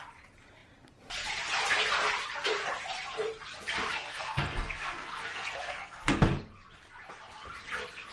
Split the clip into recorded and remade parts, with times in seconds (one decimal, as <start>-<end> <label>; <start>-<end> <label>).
0.0-3.9 recorded; 3.9-6.1 remade; 6.1-8.1 recorded